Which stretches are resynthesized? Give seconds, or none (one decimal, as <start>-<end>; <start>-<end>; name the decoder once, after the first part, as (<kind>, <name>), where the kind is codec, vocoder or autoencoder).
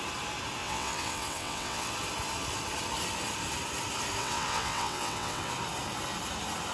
0.6-1.9 (vocoder, WaveNeXt); 4.2-5.5